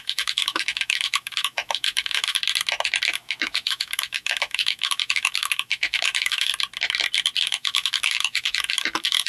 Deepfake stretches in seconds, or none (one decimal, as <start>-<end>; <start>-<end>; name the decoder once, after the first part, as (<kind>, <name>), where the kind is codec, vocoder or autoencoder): 0.0-2.4 (autoencoder, DAC-VAE); 3.1-6.5; 7.4-9.3